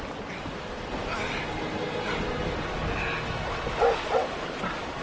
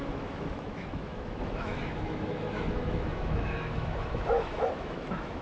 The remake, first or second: second